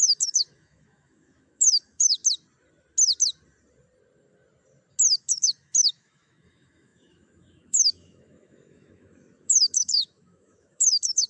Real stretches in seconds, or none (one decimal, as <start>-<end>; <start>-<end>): 2.2-5.2